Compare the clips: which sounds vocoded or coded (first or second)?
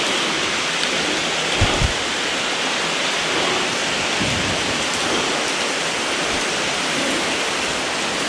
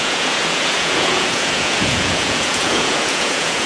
second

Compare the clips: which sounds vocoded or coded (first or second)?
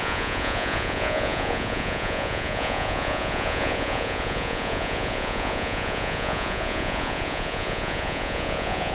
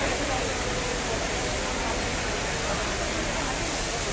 first